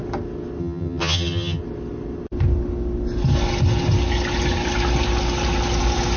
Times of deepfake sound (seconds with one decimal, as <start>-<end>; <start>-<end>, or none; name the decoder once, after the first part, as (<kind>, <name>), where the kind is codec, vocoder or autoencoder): 0.6-1.6 (vocoder, HiFi-GAN)